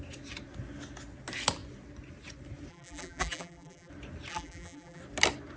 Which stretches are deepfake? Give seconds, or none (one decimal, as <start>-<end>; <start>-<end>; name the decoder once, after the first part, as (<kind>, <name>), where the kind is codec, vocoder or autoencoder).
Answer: 2.7-3.9 (vocoder, BigVGAN v2); 4.3-5.0